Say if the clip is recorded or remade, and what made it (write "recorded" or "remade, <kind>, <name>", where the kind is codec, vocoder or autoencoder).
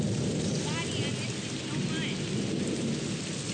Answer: recorded